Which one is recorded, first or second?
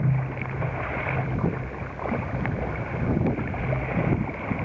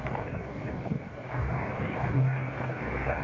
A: first